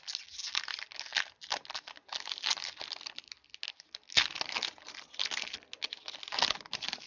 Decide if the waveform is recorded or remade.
recorded